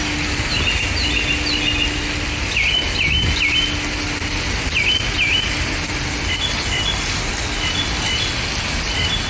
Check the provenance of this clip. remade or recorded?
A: recorded